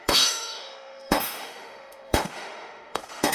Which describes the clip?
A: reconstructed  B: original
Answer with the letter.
A